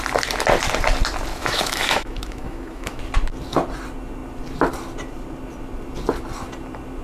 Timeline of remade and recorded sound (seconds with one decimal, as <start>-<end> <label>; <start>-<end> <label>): 0.0-1.3 recorded; 1.3-3.0 remade; 3.0-7.0 recorded